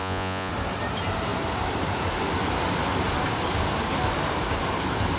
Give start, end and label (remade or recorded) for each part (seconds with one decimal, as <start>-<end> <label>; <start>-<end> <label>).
0.0-0.5 remade; 0.5-5.2 recorded